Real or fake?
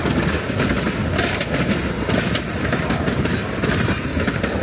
real